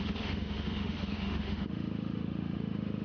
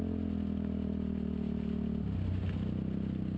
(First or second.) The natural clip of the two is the second